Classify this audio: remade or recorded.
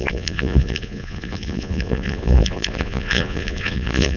remade